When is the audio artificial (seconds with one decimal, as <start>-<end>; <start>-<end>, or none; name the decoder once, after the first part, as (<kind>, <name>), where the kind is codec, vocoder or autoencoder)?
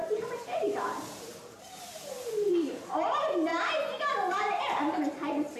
0.0-5.6 (vocoder, BigVGAN v2)